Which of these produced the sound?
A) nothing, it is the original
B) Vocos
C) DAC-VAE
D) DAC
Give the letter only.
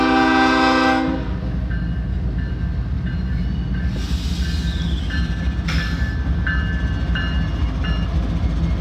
A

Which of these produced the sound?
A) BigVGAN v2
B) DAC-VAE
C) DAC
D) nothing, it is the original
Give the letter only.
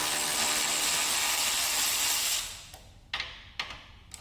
D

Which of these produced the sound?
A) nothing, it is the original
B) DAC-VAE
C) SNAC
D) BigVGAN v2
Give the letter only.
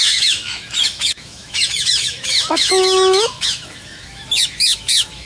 B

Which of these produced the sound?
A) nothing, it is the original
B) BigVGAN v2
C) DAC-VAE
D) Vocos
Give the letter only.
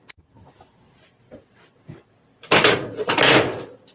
A